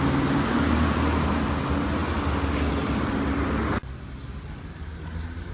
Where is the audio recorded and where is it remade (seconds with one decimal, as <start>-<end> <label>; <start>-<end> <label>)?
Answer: 0.0-5.5 recorded